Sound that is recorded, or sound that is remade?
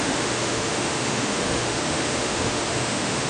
remade